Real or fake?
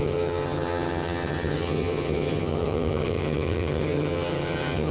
fake